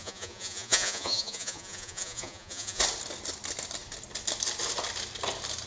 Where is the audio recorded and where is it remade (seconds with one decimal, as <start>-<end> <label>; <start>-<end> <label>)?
0.0-2.8 remade; 2.8-5.7 recorded